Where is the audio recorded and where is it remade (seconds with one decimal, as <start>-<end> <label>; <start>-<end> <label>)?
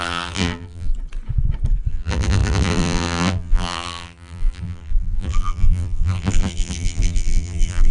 0.0-0.9 remade; 0.9-1.9 recorded; 1.9-7.9 remade